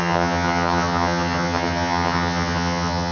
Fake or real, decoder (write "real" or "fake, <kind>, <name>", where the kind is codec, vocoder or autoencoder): fake, vocoder, HiFi-GAN